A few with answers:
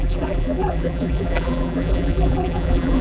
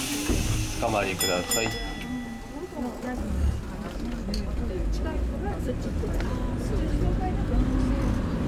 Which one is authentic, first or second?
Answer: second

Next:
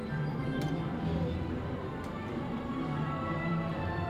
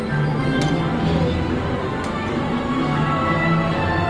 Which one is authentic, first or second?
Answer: second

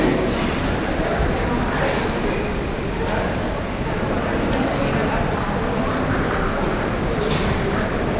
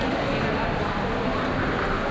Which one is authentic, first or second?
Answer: second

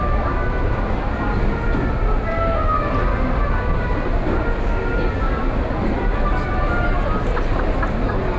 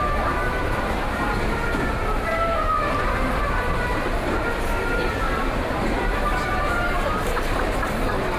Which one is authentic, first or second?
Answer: first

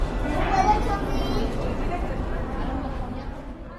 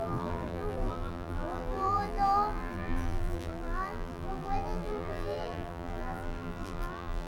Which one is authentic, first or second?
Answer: first